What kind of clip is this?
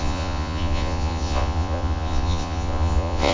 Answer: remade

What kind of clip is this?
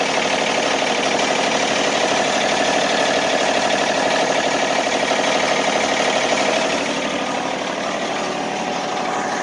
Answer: recorded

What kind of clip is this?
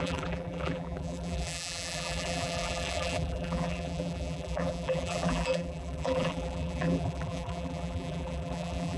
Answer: remade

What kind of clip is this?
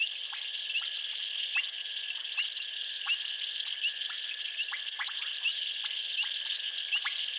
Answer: recorded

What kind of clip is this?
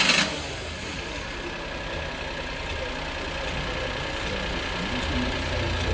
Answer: recorded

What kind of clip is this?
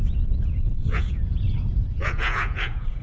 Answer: remade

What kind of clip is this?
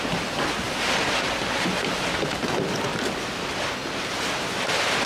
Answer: recorded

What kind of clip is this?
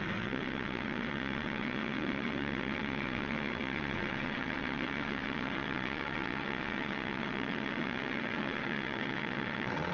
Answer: remade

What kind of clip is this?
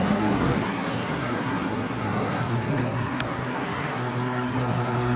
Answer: remade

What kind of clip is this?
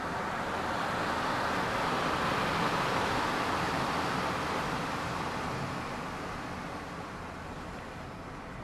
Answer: recorded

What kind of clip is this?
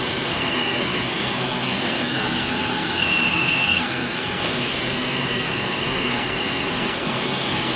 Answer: remade